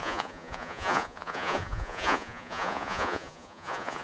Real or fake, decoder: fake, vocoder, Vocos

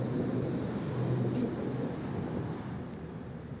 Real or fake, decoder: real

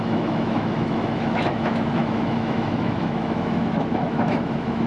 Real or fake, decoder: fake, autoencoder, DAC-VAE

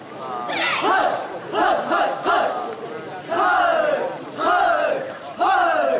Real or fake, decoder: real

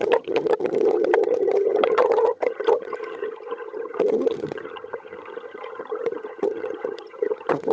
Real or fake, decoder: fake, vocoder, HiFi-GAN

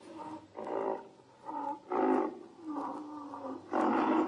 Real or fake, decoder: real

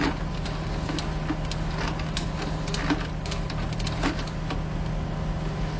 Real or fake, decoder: real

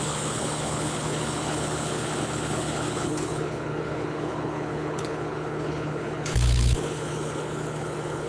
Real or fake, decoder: fake, codec, HILCodec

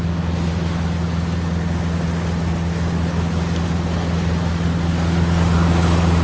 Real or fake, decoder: real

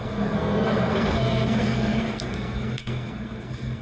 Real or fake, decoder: fake, codec, SNAC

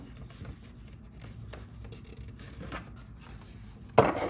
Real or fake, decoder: real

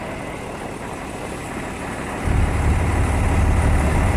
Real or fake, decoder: real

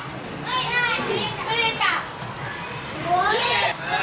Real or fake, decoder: real